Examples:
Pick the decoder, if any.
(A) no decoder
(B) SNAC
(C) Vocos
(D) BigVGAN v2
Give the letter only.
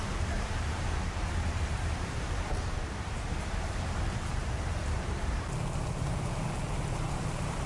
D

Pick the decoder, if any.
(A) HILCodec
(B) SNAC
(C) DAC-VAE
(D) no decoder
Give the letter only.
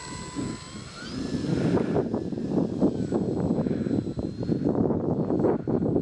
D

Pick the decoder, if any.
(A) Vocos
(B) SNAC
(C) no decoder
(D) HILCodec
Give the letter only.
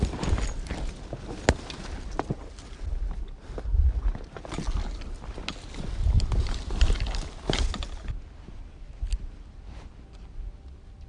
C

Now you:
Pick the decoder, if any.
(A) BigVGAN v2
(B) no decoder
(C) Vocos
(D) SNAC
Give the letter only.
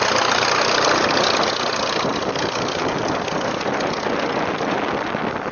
B